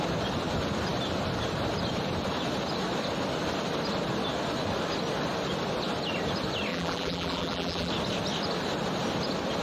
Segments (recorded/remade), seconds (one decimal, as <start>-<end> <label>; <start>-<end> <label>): 0.0-6.7 recorded; 6.7-7.9 remade; 7.9-9.6 recorded